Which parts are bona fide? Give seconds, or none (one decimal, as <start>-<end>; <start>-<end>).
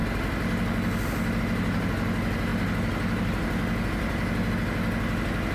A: 0.0-5.5